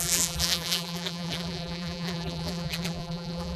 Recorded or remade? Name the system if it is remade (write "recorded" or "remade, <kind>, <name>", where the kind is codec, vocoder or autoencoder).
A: remade, vocoder, BigVGAN v2